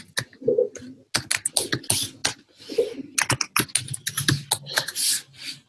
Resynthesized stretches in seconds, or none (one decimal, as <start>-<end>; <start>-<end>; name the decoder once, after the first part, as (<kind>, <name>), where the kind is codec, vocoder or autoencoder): none